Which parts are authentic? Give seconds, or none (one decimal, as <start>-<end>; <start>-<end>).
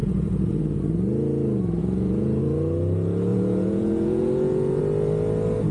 0.8-1.8; 2.4-3.3; 4.8-5.7